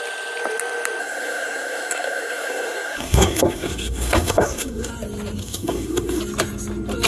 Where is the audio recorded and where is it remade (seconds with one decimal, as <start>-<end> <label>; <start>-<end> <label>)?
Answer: 0.0-1.0 recorded; 1.0-4.9 remade; 4.9-5.4 recorded; 5.4-6.2 remade; 6.2-7.1 recorded